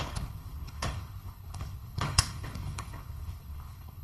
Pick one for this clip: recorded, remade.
remade